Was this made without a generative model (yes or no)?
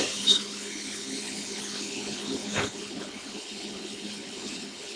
no